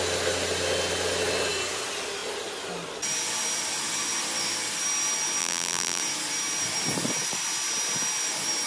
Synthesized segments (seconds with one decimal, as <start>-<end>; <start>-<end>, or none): 5.4-6.0